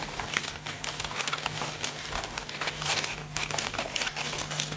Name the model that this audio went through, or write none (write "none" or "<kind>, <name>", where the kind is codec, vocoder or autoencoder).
codec, DAC